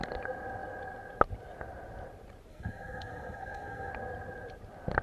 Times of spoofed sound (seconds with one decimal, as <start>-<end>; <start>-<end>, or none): 2.5-3.9